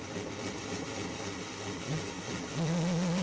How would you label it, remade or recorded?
recorded